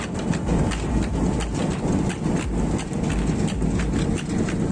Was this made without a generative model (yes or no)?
yes